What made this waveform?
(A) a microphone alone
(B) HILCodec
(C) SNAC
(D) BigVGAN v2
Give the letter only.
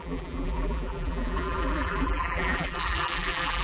D